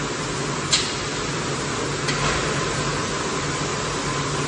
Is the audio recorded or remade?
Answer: recorded